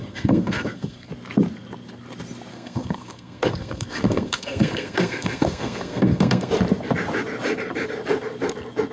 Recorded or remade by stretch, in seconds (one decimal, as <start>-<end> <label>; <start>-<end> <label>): 0.0-1.1 remade; 1.1-2.5 recorded; 2.5-6.5 remade; 6.5-8.9 recorded

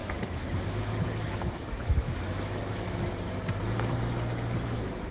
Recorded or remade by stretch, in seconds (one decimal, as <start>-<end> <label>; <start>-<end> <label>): 0.0-3.1 remade; 3.1-5.1 recorded

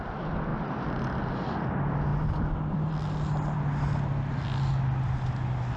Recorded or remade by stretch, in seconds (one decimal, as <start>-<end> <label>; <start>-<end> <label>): 0.0-5.8 recorded

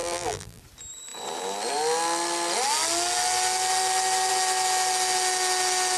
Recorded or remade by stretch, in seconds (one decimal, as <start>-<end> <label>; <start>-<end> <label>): 0.0-0.6 remade; 0.6-6.0 recorded

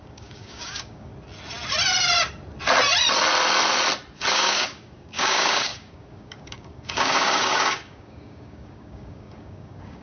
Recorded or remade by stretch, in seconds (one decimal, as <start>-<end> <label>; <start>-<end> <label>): 0.0-1.1 remade; 1.1-4.3 recorded; 4.3-10.0 remade

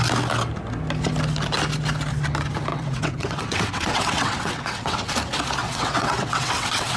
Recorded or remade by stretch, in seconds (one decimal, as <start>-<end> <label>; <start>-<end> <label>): 0.0-2.7 recorded; 2.7-5.1 remade; 5.1-5.6 recorded; 5.6-7.0 remade